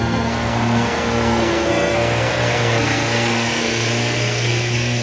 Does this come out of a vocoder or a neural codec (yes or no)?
yes